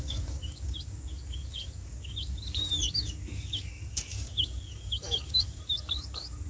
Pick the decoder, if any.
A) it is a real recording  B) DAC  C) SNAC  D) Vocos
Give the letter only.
B